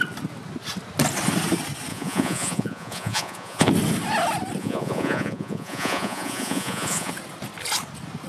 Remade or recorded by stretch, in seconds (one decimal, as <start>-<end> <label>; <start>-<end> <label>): 0.0-1.9 recorded; 1.9-3.7 remade; 3.7-4.6 recorded; 4.6-7.1 remade; 7.1-8.3 recorded